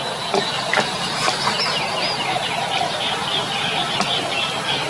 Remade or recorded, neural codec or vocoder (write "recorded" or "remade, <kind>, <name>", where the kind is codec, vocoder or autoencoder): recorded